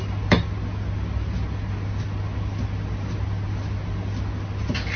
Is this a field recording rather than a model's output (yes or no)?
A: yes